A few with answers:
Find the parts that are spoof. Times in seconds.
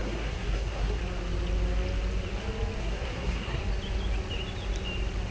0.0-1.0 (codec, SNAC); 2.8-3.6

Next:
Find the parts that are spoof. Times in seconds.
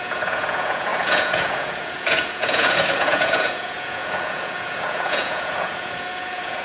0.0-6.6 (vocoder, Vocos)